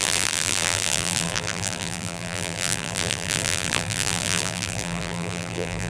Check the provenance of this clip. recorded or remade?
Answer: remade